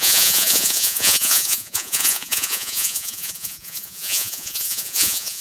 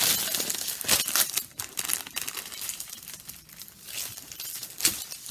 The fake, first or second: first